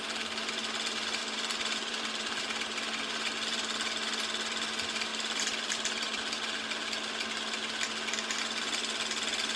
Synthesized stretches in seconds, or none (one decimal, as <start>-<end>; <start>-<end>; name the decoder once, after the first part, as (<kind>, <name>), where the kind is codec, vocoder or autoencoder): 1.2-2.4 (vocoder, BigVGAN v2); 5.1-6.2